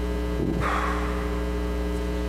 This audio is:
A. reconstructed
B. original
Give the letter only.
B